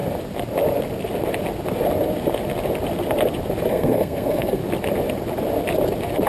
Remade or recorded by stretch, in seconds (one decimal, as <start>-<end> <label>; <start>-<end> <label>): 0.0-3.7 recorded; 3.7-4.6 remade; 4.6-6.3 recorded